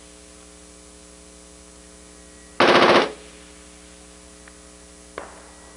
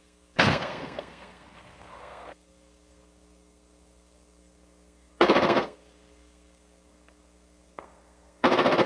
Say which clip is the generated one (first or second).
second